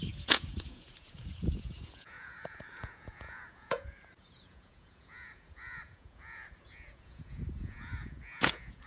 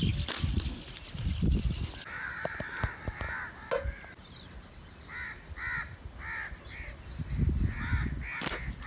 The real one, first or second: second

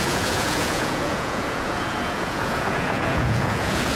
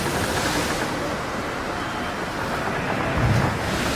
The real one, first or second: second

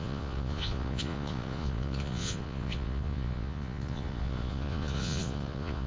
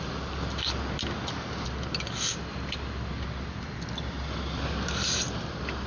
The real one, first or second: second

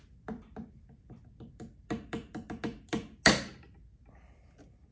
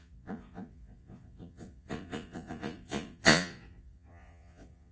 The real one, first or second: first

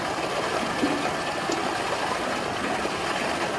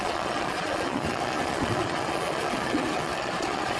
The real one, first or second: first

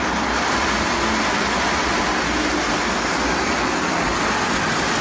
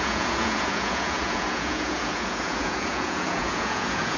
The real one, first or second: first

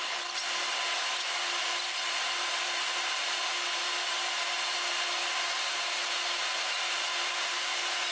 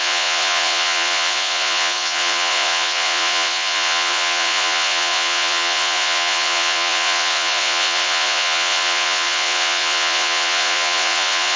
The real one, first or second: first